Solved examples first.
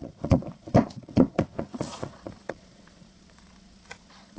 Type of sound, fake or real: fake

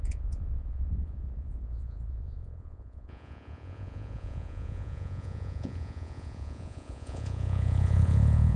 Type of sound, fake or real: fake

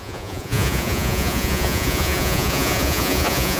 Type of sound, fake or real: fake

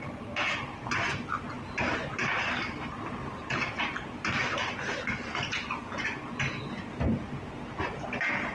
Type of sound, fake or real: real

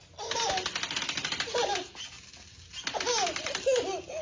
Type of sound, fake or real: real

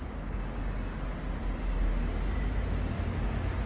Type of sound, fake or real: real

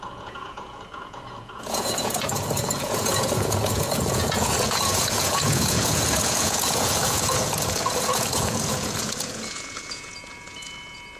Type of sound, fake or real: fake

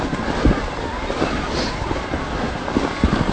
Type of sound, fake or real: real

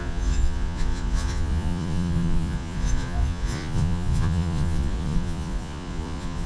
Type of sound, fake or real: fake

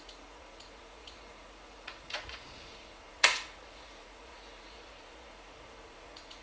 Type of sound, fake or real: fake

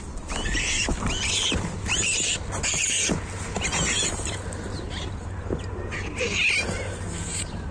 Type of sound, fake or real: real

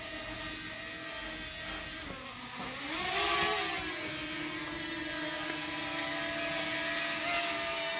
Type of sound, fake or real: real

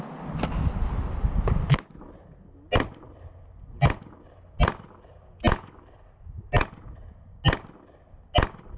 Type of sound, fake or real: real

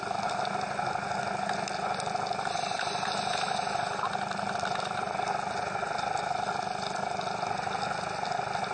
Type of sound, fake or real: real